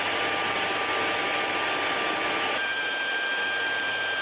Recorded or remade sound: recorded